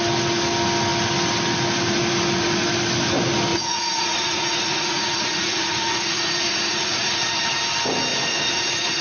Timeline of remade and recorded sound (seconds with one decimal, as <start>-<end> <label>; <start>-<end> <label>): 0.0-3.5 recorded; 3.5-7.6 remade; 7.6-8.1 recorded; 8.1-9.0 remade